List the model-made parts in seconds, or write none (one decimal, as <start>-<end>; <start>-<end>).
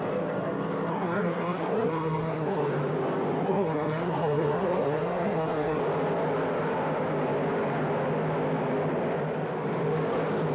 0.9-2.7; 3.4-5.8